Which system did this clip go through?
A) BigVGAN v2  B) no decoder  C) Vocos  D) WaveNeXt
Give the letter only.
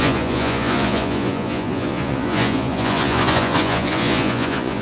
C